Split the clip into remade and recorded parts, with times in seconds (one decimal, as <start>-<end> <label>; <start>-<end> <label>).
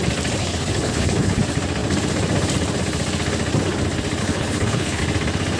0.0-0.4 recorded; 0.4-1.4 remade; 1.4-4.2 recorded; 4.2-5.0 remade; 5.0-5.6 recorded